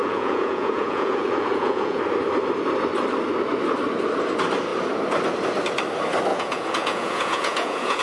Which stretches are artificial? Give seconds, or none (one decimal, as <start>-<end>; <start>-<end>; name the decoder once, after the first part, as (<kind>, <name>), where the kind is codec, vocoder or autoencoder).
0.0-2.0 (vocoder, Vocos); 6.3-8.0